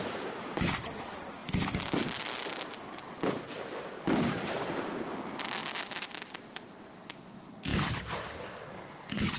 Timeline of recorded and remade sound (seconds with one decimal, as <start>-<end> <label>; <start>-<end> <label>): 0.0-9.4 recorded